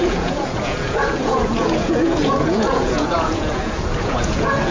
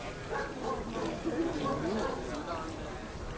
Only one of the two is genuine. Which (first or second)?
second